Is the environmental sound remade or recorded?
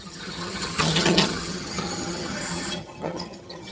remade